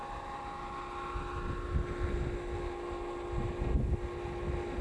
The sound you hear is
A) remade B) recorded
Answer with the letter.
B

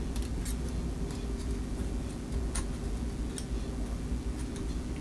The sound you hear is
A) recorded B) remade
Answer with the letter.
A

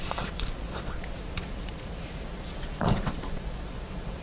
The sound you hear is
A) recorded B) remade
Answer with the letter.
B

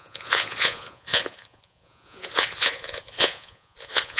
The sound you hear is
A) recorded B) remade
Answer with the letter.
B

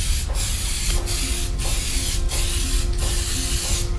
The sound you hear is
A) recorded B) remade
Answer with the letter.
A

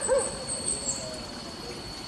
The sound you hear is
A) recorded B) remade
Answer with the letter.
A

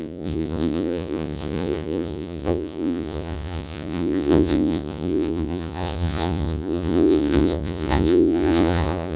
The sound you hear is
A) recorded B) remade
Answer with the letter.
B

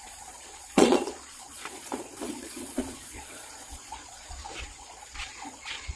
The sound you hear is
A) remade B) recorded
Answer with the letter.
A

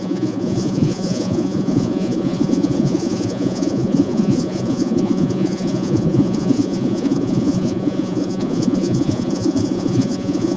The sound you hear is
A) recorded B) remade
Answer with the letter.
B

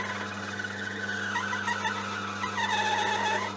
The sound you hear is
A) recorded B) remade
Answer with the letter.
A